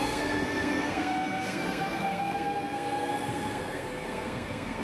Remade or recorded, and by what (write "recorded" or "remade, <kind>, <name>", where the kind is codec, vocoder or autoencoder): remade, codec, SNAC